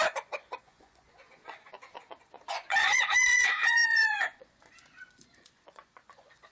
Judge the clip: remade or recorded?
remade